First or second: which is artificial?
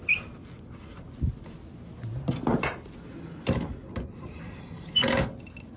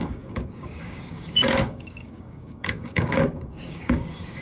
second